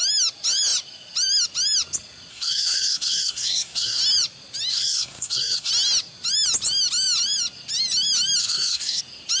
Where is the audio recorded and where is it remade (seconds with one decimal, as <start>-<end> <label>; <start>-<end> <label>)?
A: 0.0-2.3 recorded; 2.3-4.0 remade; 4.0-4.7 recorded; 4.7-5.7 remade; 5.7-8.4 recorded; 8.4-9.0 remade; 9.0-9.4 recorded